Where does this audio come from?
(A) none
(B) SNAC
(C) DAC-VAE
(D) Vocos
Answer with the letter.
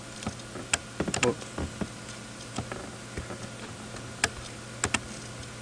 A